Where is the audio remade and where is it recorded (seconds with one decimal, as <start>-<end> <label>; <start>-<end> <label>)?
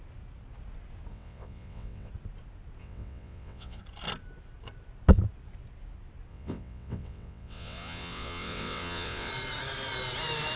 0.0-1.1 recorded; 1.1-2.1 remade; 2.1-2.8 recorded; 2.8-3.8 remade; 3.8-6.3 recorded; 6.3-9.3 remade; 9.3-10.6 recorded